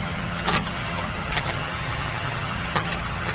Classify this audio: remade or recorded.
remade